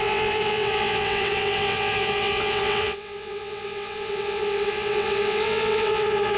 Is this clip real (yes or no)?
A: no